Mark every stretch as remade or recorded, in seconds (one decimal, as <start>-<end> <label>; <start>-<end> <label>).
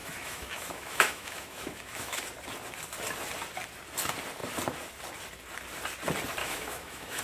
0.0-2.2 remade; 2.2-6.4 recorded; 6.4-7.2 remade